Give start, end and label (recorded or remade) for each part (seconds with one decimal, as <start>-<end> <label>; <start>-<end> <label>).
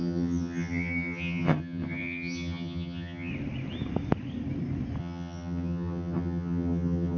0.0-3.3 remade; 3.3-5.0 recorded; 5.0-7.2 remade